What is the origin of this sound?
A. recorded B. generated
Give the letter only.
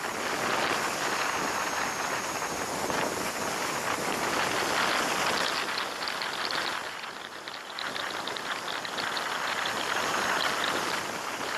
A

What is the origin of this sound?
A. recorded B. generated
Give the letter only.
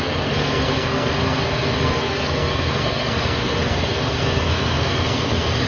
B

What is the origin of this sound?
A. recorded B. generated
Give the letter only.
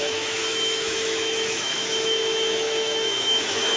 B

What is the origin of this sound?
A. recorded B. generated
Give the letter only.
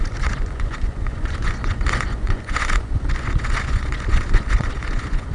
B